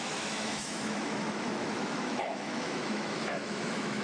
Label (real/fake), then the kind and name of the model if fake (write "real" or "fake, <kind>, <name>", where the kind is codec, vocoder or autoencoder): fake, autoencoder, DAC-VAE